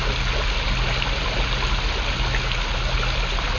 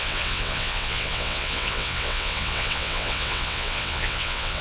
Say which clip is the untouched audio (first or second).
first